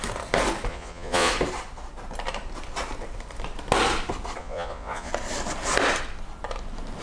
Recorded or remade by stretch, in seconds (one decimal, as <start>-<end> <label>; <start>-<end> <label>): 0.0-0.7 recorded; 0.7-1.3 remade; 1.3-4.4 recorded; 4.4-5.1 remade; 5.1-7.0 recorded